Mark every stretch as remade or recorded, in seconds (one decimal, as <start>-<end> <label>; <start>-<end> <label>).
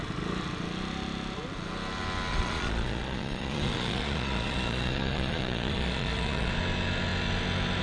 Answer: 0.0-2.3 recorded; 2.3-6.5 remade; 6.5-7.8 recorded